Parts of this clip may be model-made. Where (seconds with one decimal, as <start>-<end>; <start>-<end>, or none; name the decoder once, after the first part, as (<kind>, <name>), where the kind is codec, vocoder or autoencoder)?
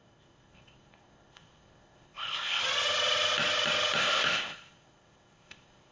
0.0-2.6 (codec, ZipCodec); 4.0-5.9